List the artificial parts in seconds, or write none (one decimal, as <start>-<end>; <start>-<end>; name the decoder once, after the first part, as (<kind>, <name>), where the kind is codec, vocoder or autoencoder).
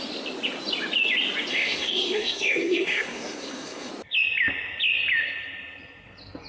1.5-3.9 (codec, SNAC)